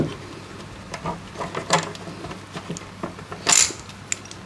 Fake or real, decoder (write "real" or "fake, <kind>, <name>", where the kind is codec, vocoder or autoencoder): real